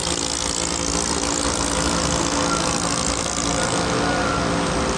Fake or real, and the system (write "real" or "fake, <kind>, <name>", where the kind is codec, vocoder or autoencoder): real